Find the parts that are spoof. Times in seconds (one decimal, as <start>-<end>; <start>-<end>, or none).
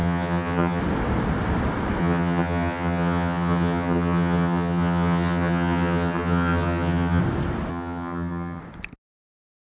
0.0-0.8; 2.0-7.2; 7.7-8.6